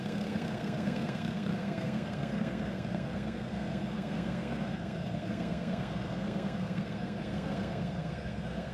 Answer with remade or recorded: remade